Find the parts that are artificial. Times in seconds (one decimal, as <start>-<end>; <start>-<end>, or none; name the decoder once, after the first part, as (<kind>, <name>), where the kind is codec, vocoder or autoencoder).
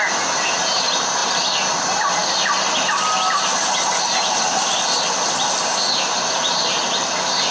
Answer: none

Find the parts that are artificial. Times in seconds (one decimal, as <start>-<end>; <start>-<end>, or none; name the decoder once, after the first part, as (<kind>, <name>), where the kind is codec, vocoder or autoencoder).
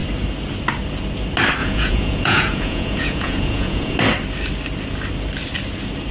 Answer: 1.6-4.0 (vocoder, Vocos)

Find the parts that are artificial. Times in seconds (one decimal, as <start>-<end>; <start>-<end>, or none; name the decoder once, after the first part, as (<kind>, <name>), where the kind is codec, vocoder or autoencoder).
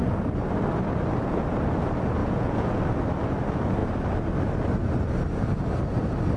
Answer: 2.2-2.8 (vocoder, Vocos)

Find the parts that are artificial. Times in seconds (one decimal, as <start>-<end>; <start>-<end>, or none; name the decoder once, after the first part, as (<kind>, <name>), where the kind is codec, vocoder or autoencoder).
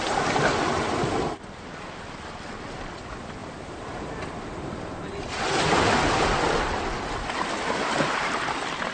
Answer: none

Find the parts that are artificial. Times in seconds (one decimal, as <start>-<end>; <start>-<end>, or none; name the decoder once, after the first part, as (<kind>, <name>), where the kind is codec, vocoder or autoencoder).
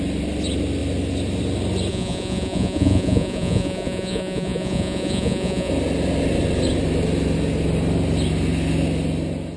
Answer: 1.9-5.7 (vocoder, Vocos)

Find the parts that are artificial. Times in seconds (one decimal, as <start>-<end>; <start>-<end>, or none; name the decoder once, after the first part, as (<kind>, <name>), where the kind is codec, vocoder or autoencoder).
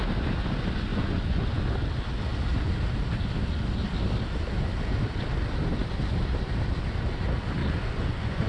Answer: 0.9-1.6 (vocoder, Vocos); 7.6-8.5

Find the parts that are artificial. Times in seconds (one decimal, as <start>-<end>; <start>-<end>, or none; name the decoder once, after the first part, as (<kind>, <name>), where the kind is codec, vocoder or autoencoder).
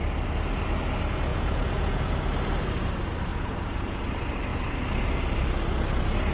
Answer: 1.3-2.1 (vocoder, Vocos); 3.3-4.0